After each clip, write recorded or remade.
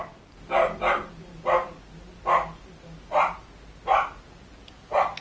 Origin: recorded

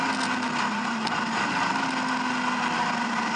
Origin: recorded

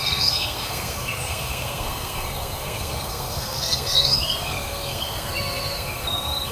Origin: remade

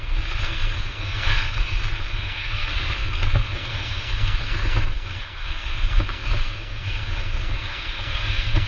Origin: remade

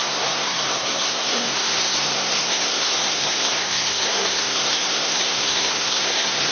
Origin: remade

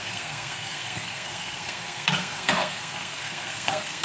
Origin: remade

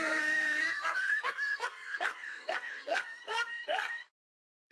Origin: remade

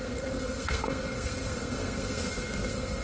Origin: remade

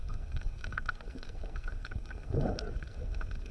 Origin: remade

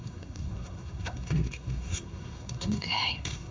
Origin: remade